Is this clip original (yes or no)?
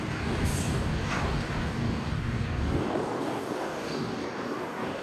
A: no